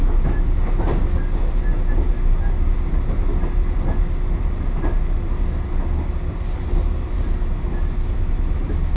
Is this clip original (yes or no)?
yes